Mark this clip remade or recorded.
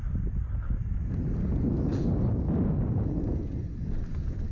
recorded